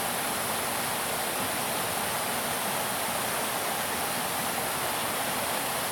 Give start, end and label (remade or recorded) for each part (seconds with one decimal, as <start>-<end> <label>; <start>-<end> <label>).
0.0-5.9 recorded